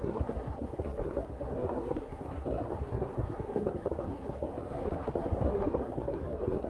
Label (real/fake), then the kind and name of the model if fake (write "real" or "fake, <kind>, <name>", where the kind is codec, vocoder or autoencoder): fake, codec, SNAC